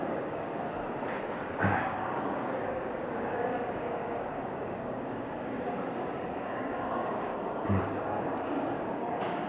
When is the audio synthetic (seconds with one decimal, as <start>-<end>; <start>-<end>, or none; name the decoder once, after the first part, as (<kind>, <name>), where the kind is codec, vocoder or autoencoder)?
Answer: 0.0-0.5 (codec, DAC); 1.3-7.3; 8.0-9.5